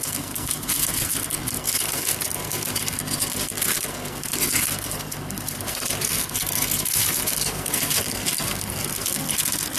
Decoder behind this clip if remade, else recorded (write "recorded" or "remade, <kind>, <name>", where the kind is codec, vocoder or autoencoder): remade, codec, SNAC